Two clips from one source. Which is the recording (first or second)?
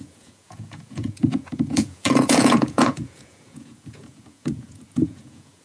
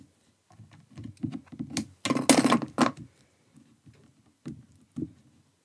second